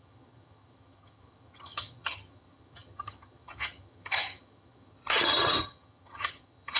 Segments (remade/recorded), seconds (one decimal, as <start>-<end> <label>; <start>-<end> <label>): 0.0-6.8 remade